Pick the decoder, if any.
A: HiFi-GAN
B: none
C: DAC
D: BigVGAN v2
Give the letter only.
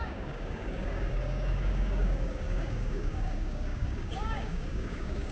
C